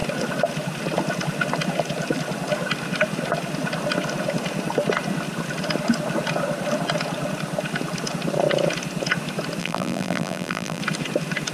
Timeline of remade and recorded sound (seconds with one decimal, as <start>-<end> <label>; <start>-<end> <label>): 0.0-9.6 recorded; 9.6-10.8 remade; 10.8-11.5 recorded